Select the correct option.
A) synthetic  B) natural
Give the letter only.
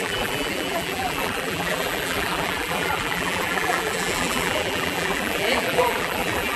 A